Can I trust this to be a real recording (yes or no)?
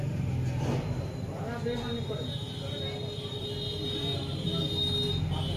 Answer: yes